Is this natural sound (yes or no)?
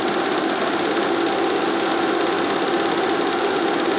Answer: yes